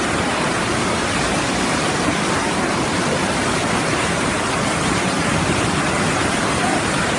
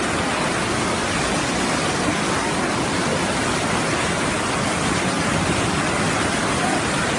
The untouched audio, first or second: second